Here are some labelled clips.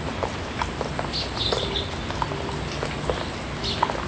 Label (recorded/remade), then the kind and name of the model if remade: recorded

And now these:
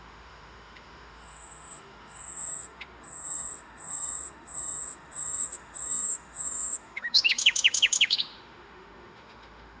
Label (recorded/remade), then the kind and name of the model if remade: remade, autoencoder, DAC-VAE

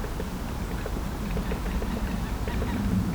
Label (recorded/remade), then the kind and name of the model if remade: recorded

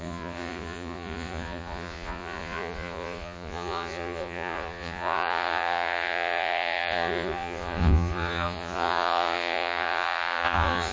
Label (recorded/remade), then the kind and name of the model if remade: remade, vocoder, Vocos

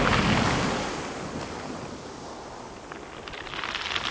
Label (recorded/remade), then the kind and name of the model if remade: recorded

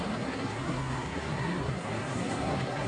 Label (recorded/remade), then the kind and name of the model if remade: remade, codec, SNAC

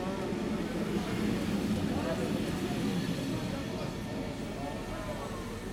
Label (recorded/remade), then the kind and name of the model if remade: recorded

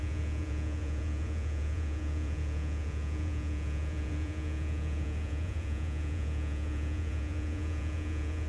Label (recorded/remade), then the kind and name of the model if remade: remade, vocoder, Vocos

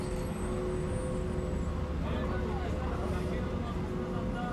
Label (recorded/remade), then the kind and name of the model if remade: recorded